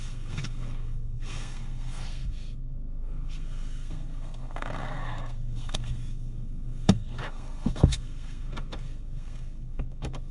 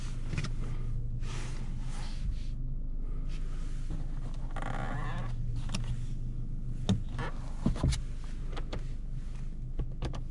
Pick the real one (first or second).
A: second